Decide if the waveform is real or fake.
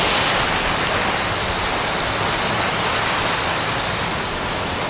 real